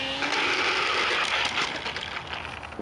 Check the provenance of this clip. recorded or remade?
recorded